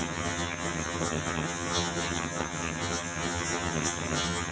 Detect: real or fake fake